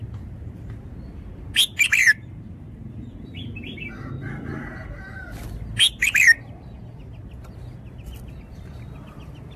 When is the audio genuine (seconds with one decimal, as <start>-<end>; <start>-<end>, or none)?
0.0-2.0; 3.9-9.6